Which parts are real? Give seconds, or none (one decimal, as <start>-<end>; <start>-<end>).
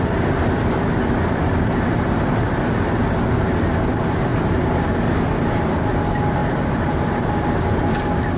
0.0-4.3; 4.9-6.4; 7.1-8.4